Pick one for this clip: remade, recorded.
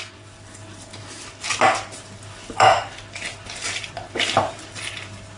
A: recorded